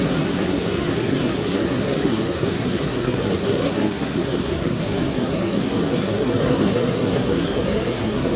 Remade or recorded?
remade